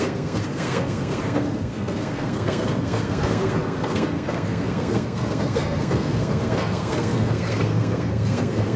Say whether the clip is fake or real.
fake